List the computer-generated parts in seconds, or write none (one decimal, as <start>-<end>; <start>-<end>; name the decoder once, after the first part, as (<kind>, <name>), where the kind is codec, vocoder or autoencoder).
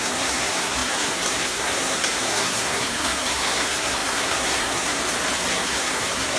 0.0-5.0 (codec, SNAC); 5.5-6.4